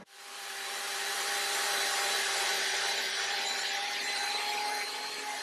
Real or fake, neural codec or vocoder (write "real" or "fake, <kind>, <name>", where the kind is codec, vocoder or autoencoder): fake, vocoder, BigVGAN v2